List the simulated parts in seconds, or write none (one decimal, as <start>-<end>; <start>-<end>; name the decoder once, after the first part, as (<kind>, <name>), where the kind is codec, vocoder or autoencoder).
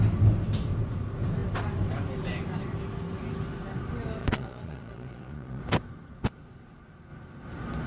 4.2-5.6 (vocoder, Vocos)